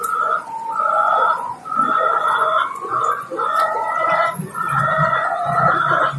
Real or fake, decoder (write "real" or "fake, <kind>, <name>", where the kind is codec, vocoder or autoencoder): fake, vocoder, Vocos